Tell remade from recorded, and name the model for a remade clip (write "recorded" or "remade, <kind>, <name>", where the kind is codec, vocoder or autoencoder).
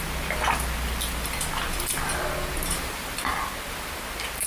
recorded